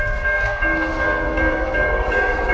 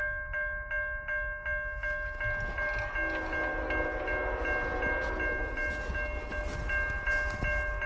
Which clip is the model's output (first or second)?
first